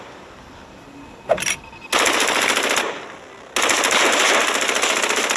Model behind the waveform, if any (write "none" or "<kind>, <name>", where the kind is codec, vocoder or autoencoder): none